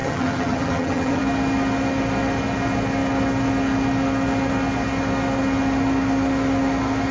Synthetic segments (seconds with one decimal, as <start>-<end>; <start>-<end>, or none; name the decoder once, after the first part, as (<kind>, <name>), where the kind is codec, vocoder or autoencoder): 0.0-1.2 (vocoder, HiFi-GAN)